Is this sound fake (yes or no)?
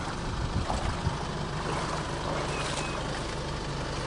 no